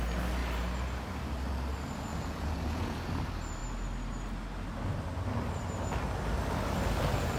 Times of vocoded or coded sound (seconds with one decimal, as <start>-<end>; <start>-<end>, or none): 2.1-3.1